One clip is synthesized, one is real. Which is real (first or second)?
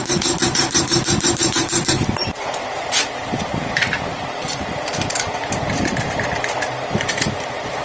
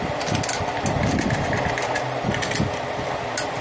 second